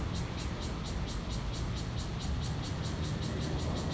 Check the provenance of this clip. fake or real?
real